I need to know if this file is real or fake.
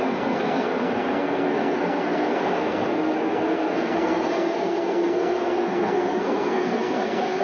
fake